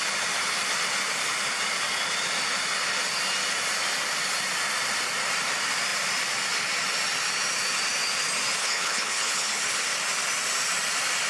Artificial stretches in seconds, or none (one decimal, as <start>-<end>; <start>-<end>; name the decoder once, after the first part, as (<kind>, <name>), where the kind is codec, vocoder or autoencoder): 8.6-9.6 (codec, HILCodec)

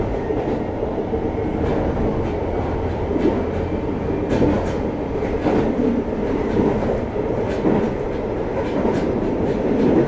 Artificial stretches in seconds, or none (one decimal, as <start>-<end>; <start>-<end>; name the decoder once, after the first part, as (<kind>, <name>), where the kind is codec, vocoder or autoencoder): 2.4-3.1 (vocoder, BigVGAN v2); 5.4-7.5